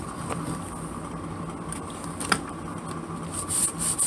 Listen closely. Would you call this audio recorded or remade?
recorded